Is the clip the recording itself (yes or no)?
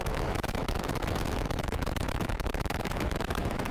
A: no